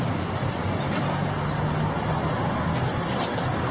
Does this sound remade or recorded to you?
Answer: recorded